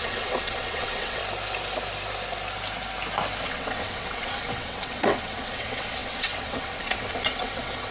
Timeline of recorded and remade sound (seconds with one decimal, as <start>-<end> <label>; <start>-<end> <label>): 0.0-1.2 remade; 1.2-3.4 recorded; 3.4-7.9 remade